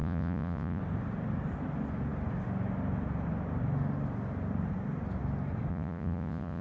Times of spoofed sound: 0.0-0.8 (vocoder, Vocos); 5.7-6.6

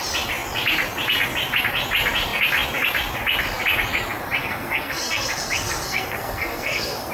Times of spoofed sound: 4.4-7.1 (codec, SNAC)

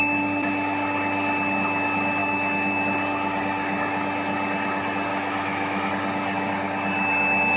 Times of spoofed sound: 2.2-2.8 (autoencoder, DAC-VAE); 5.1-5.9

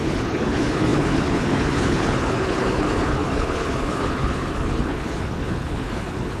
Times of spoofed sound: 0.0-6.4 (codec, HILCodec)

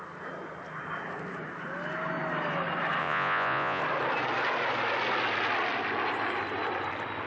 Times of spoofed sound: 3.0-3.8 (vocoder, Vocos)

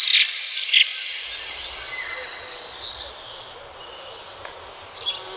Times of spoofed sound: none

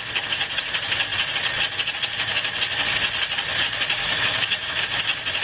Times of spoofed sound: 4.0-4.8 (autoencoder, DAC-VAE)